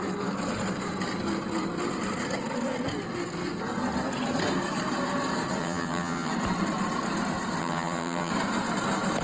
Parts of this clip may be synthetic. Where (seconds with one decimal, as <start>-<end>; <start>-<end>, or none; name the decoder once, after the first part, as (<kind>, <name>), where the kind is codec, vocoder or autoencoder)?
5.6-6.3 (vocoder, HiFi-GAN); 7.6-8.3